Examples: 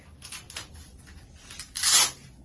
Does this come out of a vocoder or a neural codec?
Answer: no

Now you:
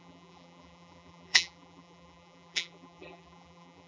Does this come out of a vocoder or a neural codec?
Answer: yes